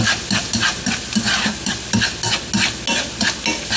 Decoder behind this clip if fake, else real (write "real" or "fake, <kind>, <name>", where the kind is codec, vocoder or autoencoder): real